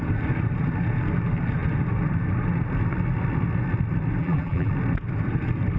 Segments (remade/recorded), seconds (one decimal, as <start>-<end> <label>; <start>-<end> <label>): 0.0-4.2 recorded; 4.2-4.7 remade; 4.7-5.8 recorded